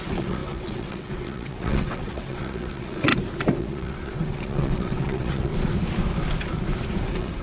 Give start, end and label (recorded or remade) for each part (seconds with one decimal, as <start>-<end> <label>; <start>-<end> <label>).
0.0-3.1 remade; 3.1-3.6 recorded; 3.6-5.5 remade; 5.5-7.0 recorded; 7.0-7.4 remade